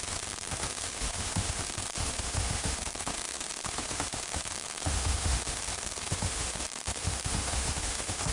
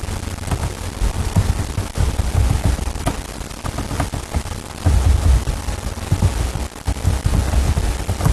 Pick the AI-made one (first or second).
first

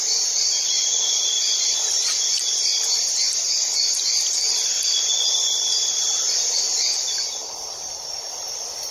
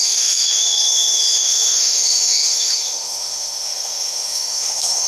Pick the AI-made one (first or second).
second